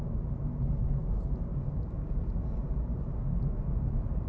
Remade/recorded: recorded